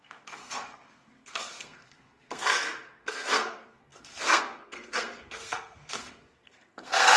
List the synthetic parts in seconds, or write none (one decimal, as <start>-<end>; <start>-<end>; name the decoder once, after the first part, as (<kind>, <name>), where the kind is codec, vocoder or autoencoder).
0.0-7.2 (codec, SNAC)